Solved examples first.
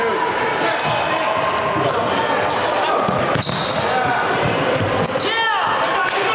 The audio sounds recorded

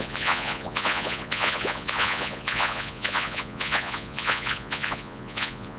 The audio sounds remade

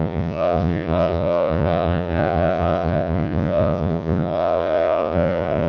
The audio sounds remade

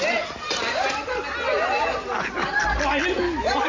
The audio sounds recorded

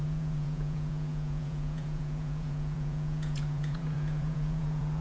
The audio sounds remade